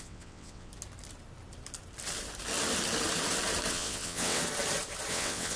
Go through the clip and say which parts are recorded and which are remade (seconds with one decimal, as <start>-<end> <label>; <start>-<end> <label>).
0.0-0.7 remade; 0.7-3.7 recorded; 3.7-4.4 remade; 4.4-5.1 recorded; 5.1-5.6 remade